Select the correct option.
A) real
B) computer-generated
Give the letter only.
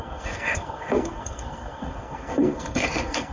B